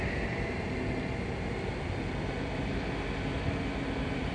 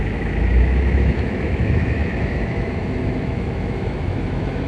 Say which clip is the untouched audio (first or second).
first